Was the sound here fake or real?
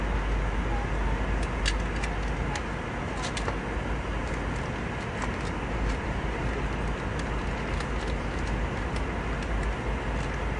real